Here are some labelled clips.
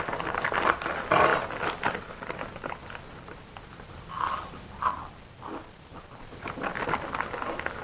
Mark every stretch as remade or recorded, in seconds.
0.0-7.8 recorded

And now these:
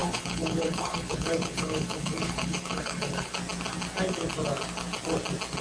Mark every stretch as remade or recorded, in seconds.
0.0-3.4 remade; 3.4-5.6 recorded

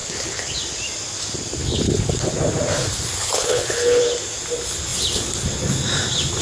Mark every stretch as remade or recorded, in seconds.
0.0-0.5 remade; 0.5-1.6 recorded; 1.6-2.3 remade; 2.3-3.2 recorded; 3.2-4.0 remade; 4.0-6.4 recorded

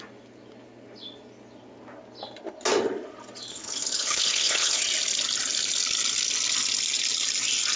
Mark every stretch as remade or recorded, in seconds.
0.0-3.5 recorded; 3.5-4.8 remade; 4.8-7.8 recorded

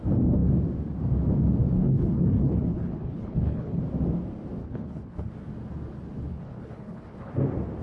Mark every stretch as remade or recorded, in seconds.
0.0-1.8 recorded; 1.8-3.8 remade; 3.8-4.6 recorded; 4.6-5.3 remade; 5.3-6.3 recorded; 6.3-7.3 remade; 7.3-7.8 recorded